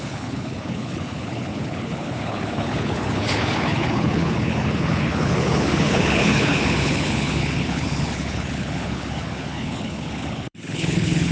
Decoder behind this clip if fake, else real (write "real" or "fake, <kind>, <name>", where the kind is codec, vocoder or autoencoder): fake, codec, HILCodec